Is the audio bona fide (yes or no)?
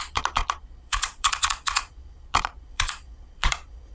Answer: no